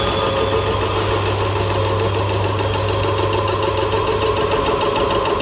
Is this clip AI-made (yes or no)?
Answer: no